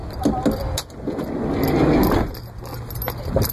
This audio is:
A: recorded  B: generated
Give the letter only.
A